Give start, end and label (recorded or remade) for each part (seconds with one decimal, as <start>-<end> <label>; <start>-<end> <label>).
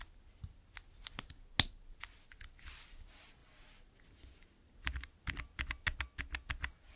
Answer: 0.0-7.0 recorded